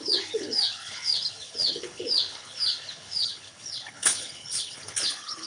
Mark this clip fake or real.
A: fake